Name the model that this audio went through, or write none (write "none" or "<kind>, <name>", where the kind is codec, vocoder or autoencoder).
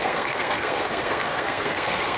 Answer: codec, SNAC